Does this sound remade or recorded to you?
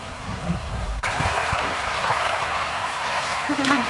remade